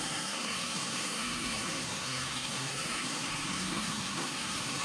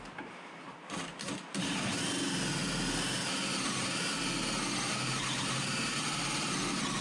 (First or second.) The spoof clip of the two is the first